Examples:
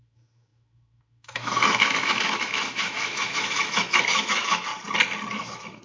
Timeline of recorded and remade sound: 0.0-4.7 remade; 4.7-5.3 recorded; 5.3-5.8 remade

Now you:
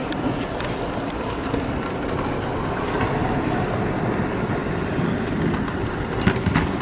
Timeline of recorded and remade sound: 0.0-0.8 remade; 0.8-1.4 recorded; 1.4-2.8 remade; 2.8-4.6 recorded; 4.6-6.8 remade

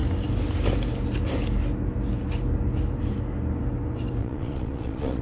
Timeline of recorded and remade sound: 0.0-4.2 recorded; 4.2-5.2 remade

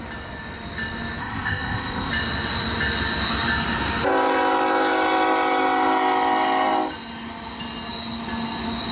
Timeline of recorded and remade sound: 0.0-1.2 recorded; 1.2-2.1 remade; 2.1-8.9 recorded